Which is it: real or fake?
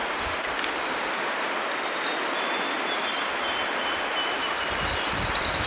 real